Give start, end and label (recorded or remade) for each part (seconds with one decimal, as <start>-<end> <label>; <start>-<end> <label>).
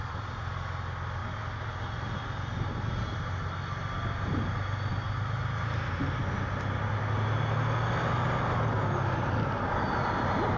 0.0-10.6 recorded